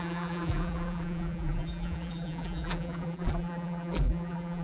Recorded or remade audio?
remade